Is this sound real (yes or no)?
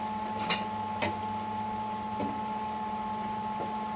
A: yes